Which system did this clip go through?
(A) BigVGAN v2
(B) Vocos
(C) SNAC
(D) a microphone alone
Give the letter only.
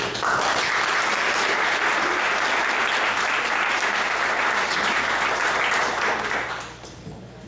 D